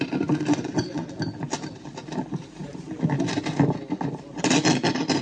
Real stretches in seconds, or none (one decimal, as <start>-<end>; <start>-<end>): 0.0-0.5; 1.1-5.2